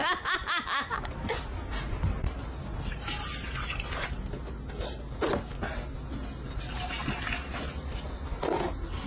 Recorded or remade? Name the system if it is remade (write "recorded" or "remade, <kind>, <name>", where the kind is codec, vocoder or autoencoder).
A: recorded